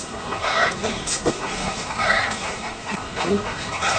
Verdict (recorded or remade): remade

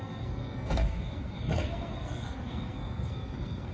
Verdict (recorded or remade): remade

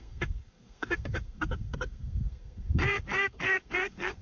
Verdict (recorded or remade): remade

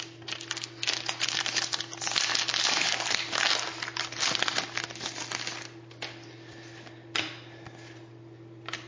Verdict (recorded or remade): recorded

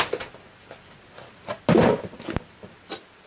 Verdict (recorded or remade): recorded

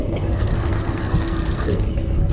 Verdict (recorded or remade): remade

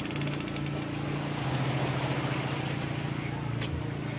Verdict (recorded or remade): recorded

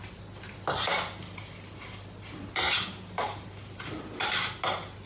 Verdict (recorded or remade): recorded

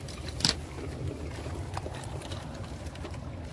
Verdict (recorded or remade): recorded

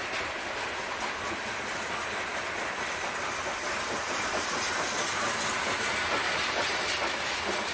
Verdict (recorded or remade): recorded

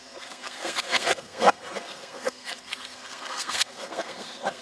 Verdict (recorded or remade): remade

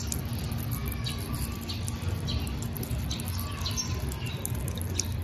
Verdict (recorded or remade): recorded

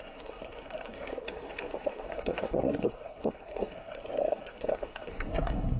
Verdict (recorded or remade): remade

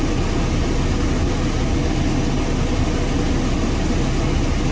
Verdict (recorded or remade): recorded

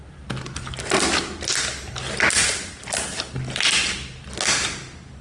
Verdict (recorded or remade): recorded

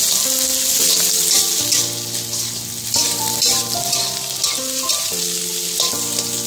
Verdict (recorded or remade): recorded